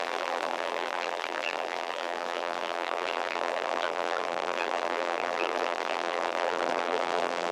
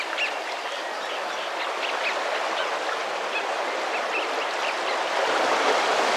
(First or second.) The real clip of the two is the second